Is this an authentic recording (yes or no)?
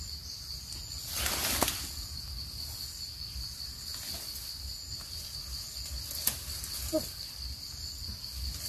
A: yes